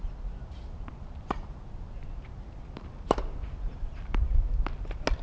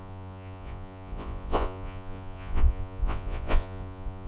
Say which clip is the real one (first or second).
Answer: first